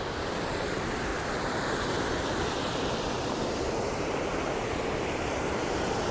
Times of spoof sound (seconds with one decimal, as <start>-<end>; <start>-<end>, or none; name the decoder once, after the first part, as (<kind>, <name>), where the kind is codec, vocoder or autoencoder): 1.1-4.8 (vocoder, BigVGAN v2)